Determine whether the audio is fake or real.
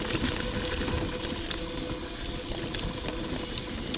real